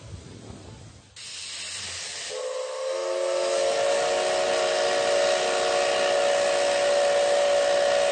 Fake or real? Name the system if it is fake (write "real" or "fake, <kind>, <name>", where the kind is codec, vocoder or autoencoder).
real